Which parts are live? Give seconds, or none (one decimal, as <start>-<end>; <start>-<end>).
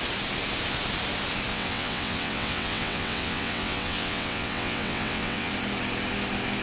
0.0-1.5; 5.5-6.6